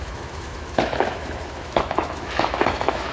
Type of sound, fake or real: fake